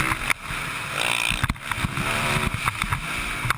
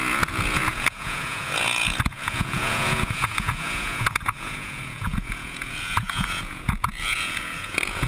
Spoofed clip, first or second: second